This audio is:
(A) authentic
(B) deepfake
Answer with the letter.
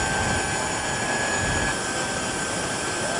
A